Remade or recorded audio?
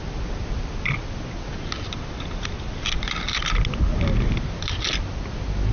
recorded